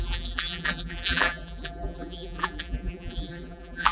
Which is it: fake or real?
fake